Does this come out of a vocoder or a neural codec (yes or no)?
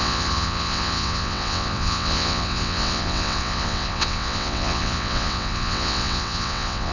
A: yes